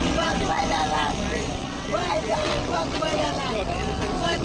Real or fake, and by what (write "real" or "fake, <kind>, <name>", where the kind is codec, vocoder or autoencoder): fake, vocoder, WaveNeXt